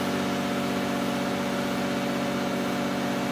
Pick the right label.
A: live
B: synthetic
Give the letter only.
A